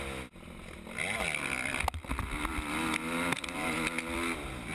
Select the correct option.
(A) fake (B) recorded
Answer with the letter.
B